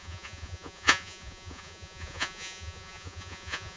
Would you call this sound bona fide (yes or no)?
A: no